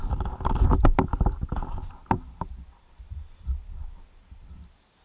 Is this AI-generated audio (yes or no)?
yes